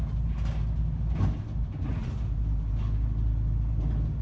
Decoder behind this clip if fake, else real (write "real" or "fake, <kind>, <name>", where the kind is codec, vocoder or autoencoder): real